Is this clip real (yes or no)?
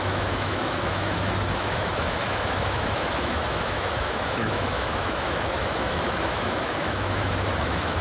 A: no